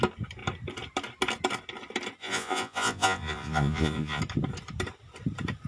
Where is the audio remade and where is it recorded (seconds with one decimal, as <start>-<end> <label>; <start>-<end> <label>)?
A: 0.0-2.2 recorded; 2.2-4.2 remade; 4.2-5.7 recorded